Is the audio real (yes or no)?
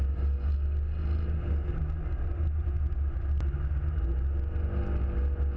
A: yes